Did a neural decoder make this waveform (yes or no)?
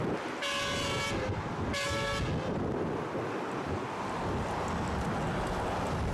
no